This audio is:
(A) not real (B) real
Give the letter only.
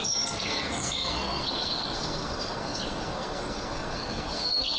A